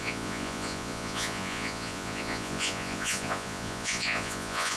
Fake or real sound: fake